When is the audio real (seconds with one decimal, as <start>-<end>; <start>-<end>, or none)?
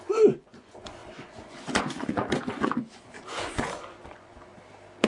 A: 4.5-5.1